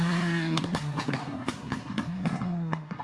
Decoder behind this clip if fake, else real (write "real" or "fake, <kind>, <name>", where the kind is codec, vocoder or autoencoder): fake, codec, SNAC